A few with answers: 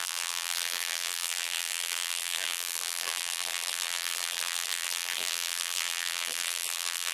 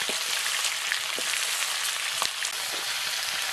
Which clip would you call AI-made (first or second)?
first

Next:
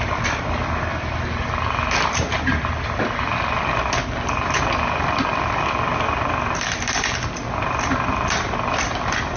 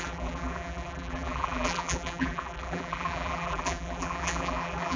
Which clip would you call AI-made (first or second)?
second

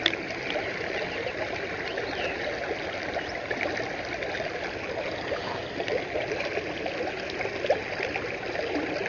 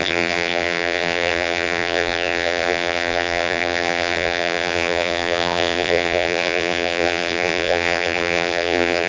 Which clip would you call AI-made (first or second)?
second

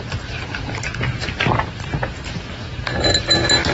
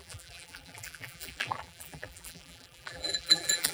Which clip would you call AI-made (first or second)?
second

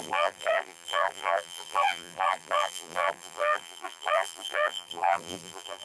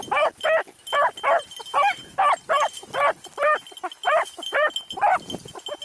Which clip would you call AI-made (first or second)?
first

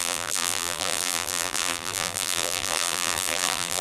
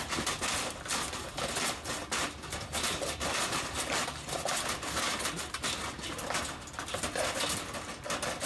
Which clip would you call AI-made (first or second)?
first